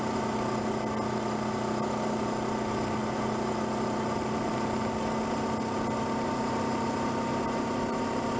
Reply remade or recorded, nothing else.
recorded